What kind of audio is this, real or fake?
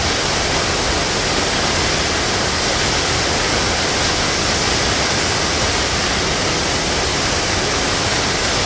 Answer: real